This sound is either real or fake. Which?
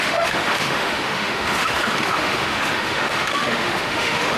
fake